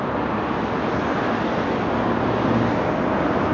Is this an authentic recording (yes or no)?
yes